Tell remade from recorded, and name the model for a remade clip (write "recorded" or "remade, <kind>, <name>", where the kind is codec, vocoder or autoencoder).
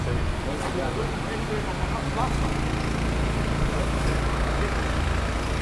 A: recorded